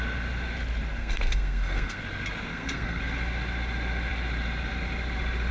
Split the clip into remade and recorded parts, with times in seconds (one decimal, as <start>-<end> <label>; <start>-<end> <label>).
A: 0.0-1.0 recorded; 1.0-2.0 remade; 2.0-2.5 recorded; 2.5-3.0 remade; 3.0-5.5 recorded